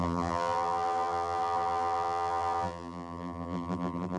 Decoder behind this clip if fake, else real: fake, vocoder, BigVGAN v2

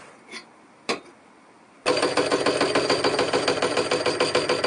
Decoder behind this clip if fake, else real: real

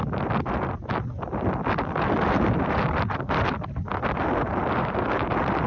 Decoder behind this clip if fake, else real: fake, vocoder, BigVGAN v2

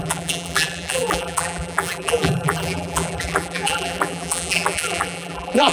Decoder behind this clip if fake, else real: fake, vocoder, BigVGAN v2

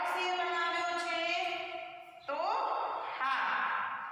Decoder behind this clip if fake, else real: fake, vocoder, BigVGAN v2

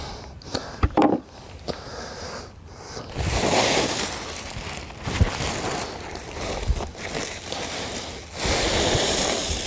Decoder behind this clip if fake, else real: real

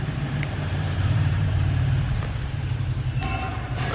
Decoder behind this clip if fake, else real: fake, vocoder, BigVGAN v2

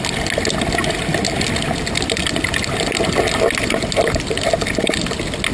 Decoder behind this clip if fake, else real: real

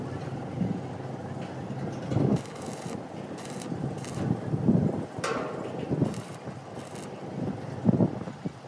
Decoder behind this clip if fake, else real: real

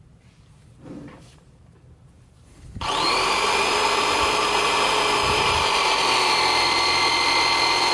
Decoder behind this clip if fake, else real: fake, vocoder, BigVGAN v2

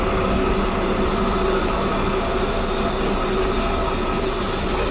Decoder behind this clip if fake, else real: real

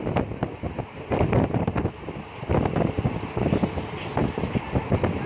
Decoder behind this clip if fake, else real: real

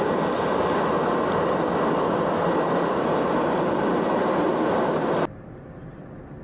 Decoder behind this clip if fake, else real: real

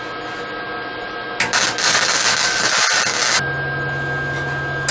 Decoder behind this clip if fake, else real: real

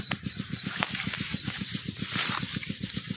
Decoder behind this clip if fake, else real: fake, vocoder, BigVGAN v2